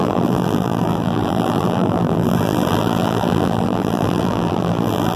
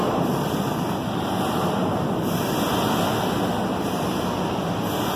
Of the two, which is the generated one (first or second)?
first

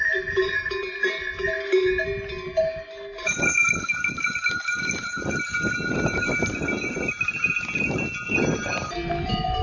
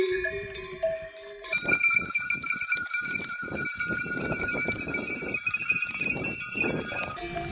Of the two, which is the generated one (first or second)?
second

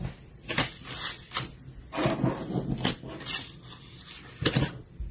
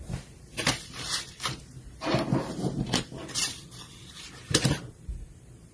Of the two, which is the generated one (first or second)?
second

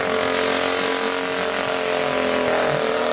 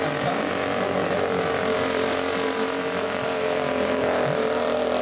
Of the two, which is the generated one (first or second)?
second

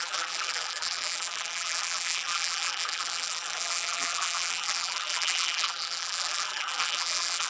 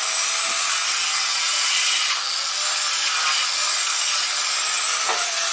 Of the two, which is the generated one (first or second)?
first